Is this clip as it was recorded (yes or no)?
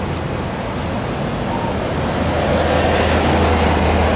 yes